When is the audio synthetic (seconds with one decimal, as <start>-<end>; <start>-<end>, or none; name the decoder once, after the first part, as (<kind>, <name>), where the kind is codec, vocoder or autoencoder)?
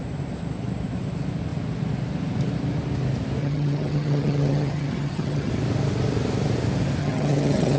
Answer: 3.4-5.5 (vocoder, HiFi-GAN); 7.0-7.8